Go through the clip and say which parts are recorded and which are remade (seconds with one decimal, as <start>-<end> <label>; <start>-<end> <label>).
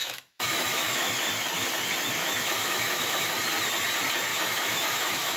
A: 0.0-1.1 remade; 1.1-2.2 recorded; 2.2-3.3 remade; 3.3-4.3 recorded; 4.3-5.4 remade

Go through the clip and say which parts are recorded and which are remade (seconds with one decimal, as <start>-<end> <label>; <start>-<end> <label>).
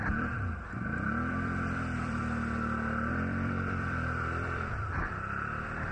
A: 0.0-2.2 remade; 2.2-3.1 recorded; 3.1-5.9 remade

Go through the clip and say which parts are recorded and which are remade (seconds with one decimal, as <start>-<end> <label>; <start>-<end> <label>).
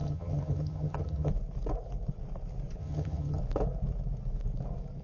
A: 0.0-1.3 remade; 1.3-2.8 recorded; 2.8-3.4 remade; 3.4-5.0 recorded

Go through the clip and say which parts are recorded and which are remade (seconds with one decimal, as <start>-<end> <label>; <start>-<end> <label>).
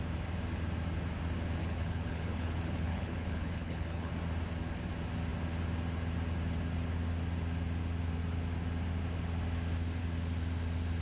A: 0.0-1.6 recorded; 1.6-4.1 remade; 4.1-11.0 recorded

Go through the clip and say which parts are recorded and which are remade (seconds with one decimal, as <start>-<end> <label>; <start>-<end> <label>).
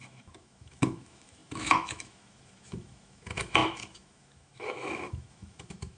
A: 0.0-6.0 remade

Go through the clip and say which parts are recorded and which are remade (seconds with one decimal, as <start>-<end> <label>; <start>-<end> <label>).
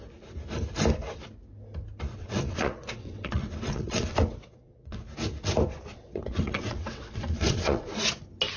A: 0.0-2.1 recorded; 2.1-5.0 remade; 5.0-5.9 recorded; 5.9-7.9 remade; 7.9-8.6 recorded